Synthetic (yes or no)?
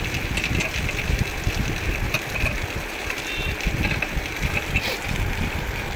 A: no